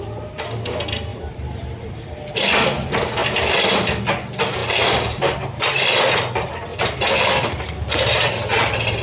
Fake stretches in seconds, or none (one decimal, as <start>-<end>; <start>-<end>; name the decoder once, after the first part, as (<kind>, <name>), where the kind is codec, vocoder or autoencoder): 1.1-2.1 (vocoder, BigVGAN v2); 6.7-8.3